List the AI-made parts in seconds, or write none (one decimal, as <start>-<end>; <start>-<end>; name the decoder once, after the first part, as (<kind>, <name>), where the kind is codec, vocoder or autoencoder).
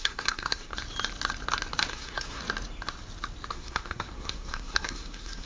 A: 0.0-0.7 (codec, SNAC); 1.9-2.4; 3.5-5.5